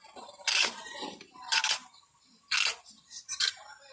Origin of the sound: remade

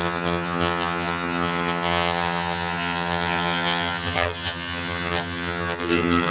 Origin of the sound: remade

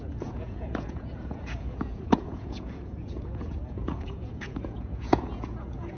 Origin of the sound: remade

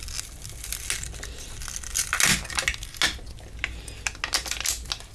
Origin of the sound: recorded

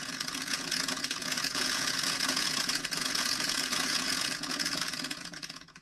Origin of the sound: remade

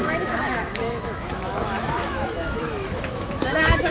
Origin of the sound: remade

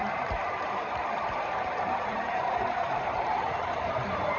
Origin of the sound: remade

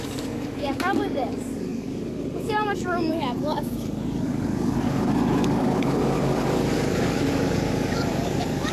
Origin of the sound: remade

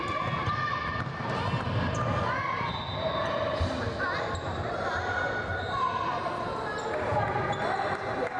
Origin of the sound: recorded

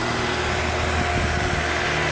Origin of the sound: recorded